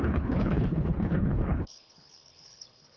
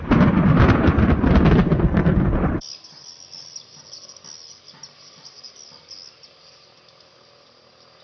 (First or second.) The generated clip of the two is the first